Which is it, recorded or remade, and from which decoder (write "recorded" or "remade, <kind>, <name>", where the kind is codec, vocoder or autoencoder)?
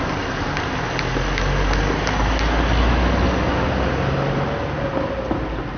recorded